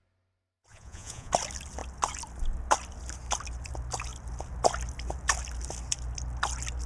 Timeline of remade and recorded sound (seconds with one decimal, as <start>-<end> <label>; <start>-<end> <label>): 0.0-0.7 recorded; 0.7-1.3 remade; 1.3-6.9 recorded